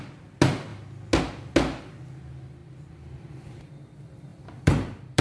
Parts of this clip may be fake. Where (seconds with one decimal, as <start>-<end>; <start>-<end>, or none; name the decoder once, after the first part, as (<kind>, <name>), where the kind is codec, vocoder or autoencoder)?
2.6-3.7 (vocoder, BigVGAN v2); 4.3-5.2